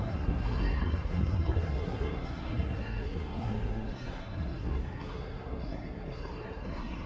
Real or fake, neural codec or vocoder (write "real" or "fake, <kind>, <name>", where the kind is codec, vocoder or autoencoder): fake, codec, SNAC